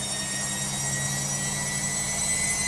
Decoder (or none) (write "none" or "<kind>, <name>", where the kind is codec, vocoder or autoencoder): none